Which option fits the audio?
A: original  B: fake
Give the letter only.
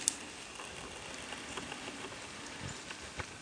A